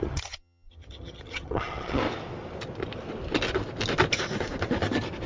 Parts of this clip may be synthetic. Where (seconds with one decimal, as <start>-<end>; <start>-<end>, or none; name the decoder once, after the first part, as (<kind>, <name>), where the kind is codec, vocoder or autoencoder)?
0.0-2.0 (vocoder, HiFi-GAN)